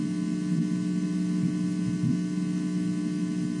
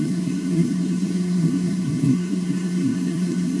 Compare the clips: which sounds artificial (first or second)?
second